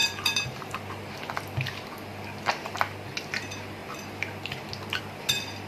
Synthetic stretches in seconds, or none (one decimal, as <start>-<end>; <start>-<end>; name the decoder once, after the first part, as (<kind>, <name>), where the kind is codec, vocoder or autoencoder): 0.0-0.8 (vocoder, BigVGAN v2)